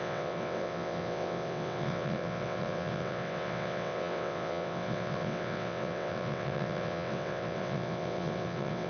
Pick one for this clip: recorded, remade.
remade